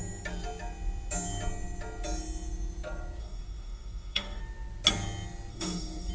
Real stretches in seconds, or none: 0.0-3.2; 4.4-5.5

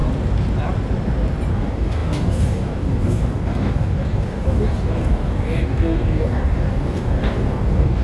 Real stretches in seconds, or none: 0.0-1.5